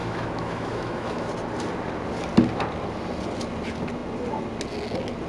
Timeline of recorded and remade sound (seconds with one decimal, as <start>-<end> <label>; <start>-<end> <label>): 0.0-1.3 remade; 1.3-5.3 recorded